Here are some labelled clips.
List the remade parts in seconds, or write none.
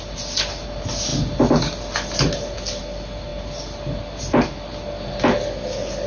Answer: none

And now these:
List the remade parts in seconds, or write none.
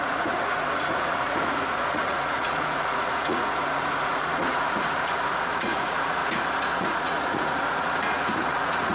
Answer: 0.0-6.2 (vocoder, Vocos); 6.8-8.9